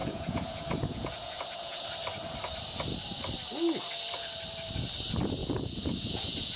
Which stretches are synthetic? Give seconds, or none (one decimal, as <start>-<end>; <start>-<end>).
0.0-1.9; 5.4-6.6